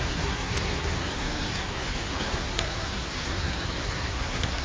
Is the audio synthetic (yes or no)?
yes